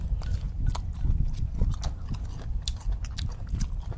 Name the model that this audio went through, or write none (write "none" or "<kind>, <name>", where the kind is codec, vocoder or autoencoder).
none